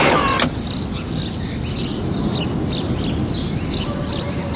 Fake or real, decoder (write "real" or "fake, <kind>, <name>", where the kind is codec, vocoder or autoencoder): real